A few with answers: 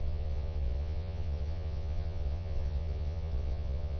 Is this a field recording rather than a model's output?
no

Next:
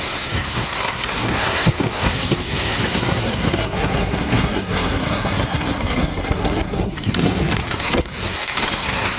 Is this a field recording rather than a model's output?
no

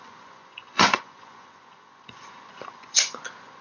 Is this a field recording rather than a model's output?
no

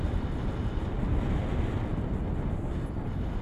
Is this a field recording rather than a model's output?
yes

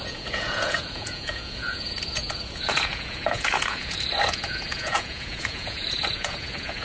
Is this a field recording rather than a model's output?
no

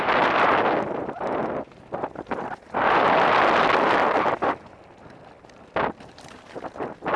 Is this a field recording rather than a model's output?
yes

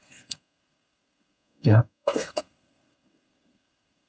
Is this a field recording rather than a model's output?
no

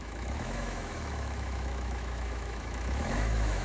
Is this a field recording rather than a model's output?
no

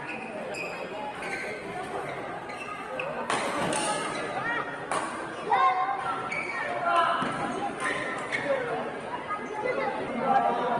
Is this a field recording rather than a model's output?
yes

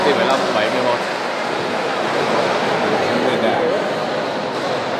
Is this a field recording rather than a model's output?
yes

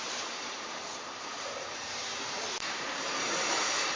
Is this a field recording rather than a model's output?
no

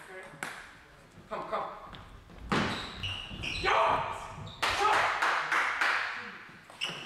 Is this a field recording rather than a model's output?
yes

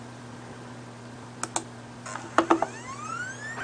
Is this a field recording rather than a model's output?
yes